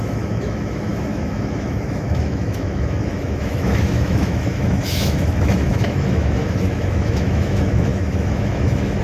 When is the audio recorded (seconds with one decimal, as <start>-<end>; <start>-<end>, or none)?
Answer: none